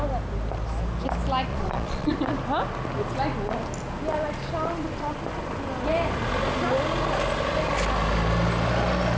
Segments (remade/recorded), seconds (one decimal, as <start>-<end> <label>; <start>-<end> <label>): 0.0-1.5 recorded; 1.5-2.1 remade; 2.1-9.2 recorded